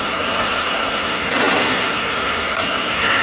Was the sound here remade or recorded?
remade